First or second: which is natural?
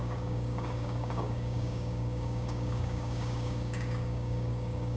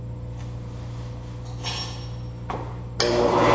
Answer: second